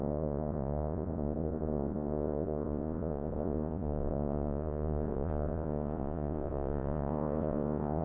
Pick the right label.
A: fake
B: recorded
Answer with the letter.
A